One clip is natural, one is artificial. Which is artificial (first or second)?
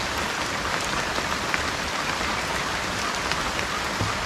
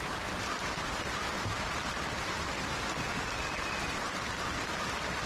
second